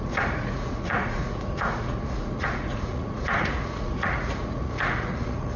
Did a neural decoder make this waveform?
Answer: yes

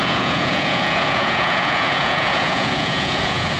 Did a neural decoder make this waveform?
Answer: yes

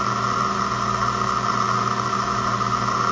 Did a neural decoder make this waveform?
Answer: no